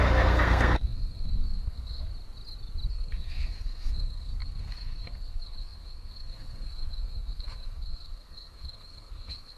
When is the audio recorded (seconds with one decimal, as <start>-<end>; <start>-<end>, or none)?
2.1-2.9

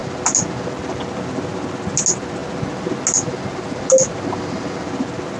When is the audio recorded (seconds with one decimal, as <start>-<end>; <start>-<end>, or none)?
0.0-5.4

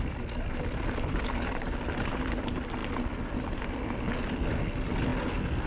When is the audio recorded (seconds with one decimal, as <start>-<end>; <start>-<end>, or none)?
0.0-5.7

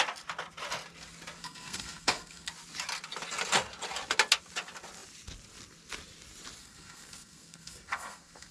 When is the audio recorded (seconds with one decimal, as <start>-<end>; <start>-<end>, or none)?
0.0-1.4; 2.5-6.6

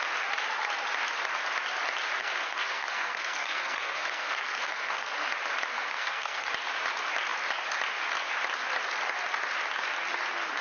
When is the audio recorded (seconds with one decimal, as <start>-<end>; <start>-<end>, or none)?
0.0-2.2; 5.3-5.7; 6.5-10.6

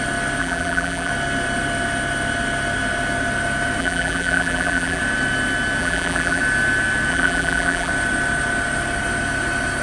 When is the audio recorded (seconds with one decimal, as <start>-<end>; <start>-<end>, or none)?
0.0-0.4; 1.1-3.8; 5.0-5.8; 6.4-7.1; 7.9-9.8